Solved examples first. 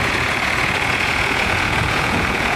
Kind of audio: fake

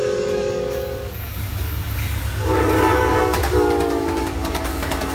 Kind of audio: fake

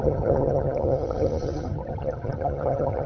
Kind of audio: fake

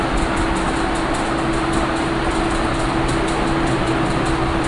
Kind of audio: real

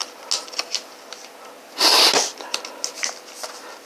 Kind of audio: real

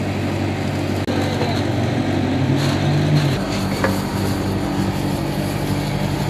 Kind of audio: real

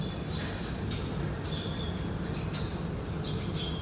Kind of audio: real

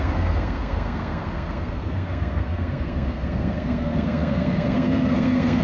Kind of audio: fake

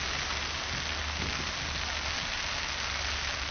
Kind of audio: real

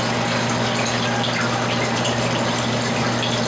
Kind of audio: real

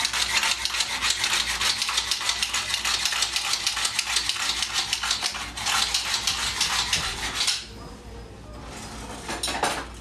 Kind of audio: real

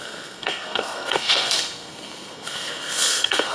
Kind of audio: fake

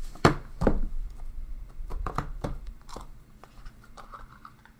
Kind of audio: fake